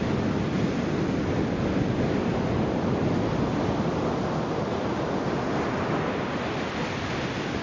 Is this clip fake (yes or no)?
no